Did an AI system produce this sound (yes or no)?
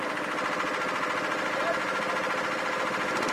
no